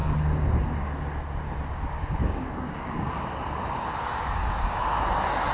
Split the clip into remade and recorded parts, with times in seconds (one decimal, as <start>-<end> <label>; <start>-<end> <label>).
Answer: 0.0-0.6 remade; 0.6-2.2 recorded; 2.2-3.1 remade; 3.1-4.1 recorded; 4.1-4.8 remade; 4.8-5.5 recorded